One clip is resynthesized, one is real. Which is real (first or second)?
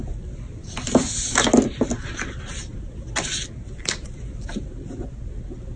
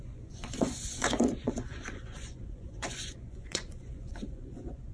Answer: first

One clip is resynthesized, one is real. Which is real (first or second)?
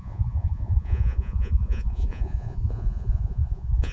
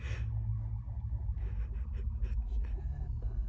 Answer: second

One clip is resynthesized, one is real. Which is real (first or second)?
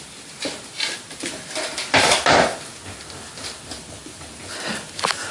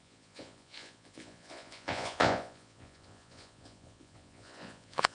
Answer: first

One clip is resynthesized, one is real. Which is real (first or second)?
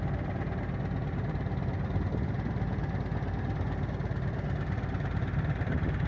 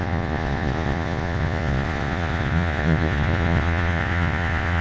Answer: first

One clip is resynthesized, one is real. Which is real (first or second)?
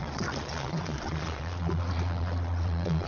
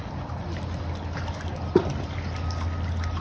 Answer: second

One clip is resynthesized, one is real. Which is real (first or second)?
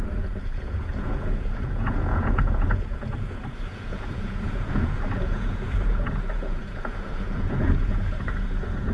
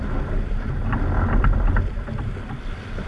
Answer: second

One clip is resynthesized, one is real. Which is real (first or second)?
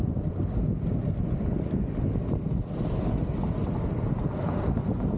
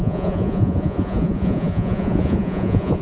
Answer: first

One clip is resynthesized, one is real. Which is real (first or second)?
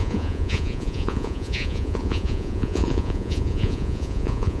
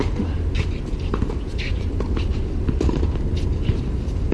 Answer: second